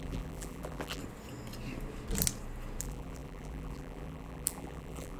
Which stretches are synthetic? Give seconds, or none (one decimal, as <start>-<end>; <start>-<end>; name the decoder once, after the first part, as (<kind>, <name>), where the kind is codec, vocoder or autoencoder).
0.0-1.0 (vocoder, BigVGAN v2); 2.8-5.2